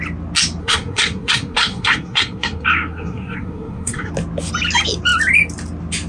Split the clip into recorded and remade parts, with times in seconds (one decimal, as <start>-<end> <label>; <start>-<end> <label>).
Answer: 0.0-0.6 recorded; 0.6-4.1 remade; 4.1-6.1 recorded